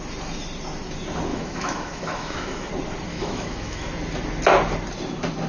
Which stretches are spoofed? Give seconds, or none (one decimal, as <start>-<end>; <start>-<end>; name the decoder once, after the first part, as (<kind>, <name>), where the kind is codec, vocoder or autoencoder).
1.3-2.7 (autoencoder, DAC-VAE); 3.1-3.9

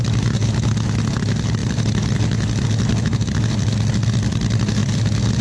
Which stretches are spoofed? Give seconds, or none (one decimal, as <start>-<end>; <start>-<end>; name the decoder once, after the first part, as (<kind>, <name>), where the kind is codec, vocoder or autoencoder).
none